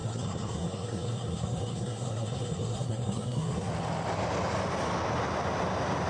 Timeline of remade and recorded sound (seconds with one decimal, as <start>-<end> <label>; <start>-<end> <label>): 0.0-3.7 remade; 3.7-6.1 recorded